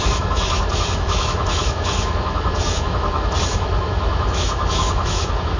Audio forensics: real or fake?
fake